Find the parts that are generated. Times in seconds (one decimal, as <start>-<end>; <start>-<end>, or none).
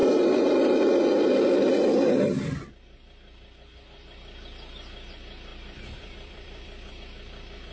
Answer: 5.5-6.9